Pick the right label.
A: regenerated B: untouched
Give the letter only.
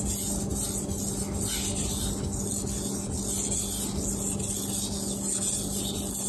B